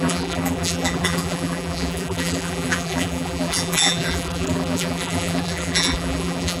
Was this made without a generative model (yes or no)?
no